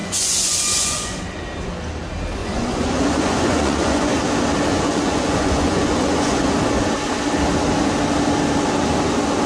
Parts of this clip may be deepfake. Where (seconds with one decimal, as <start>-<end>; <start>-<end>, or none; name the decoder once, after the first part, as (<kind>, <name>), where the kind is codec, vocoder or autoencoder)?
0.0-1.3 (vocoder, Vocos); 2.4-4.1; 4.7-6.5

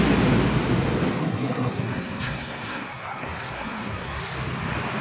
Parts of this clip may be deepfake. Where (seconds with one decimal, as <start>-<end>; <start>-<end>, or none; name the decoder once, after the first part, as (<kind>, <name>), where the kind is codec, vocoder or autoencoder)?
1.2-4.2 (codec, SNAC)

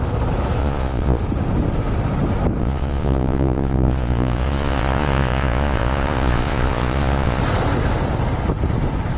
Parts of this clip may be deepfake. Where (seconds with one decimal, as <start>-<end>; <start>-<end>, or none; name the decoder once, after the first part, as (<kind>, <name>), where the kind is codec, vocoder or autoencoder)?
0.6-1.2 (vocoder, Vocos); 2.6-7.4

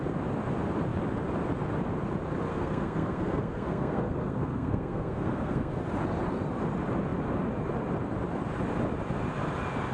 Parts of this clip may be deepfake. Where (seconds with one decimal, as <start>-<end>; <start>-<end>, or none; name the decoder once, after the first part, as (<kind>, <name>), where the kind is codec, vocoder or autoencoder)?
2.5-5.8 (codec, SNAC)

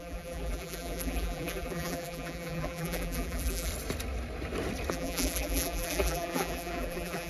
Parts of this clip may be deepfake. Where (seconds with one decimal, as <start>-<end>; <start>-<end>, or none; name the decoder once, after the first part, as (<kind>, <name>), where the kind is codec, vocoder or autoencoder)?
0.0-3.7 (vocoder, BigVGAN v2); 4.9-7.3